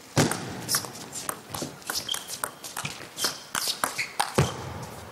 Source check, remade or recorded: recorded